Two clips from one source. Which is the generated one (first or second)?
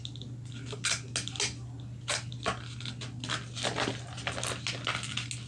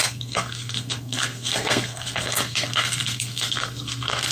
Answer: second